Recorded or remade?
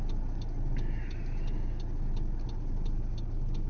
recorded